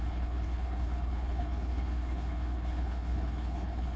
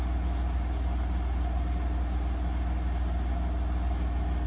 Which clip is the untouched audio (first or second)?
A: second